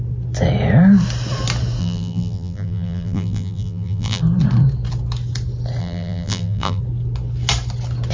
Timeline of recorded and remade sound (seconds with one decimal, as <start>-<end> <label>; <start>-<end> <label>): 0.0-1.8 recorded; 1.8-4.2 remade; 4.2-5.8 recorded; 5.8-6.8 remade; 6.8-8.1 recorded